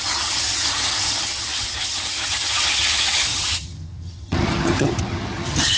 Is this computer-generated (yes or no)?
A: yes